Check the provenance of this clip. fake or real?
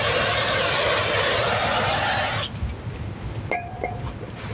real